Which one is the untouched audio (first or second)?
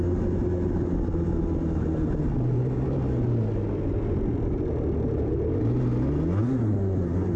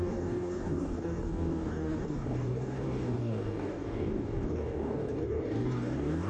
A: first